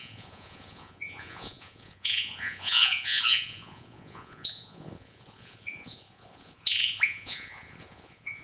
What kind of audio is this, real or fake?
fake